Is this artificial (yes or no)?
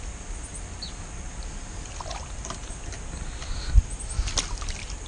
no